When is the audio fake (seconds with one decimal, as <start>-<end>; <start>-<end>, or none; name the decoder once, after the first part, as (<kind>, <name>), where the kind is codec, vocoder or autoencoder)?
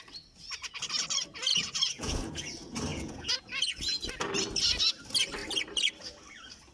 1.5-2.3 (vocoder, Vocos); 2.9-3.8